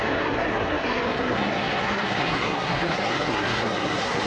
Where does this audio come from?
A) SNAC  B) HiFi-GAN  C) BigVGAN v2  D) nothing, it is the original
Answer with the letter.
A